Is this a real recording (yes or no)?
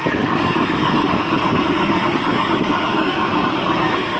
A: no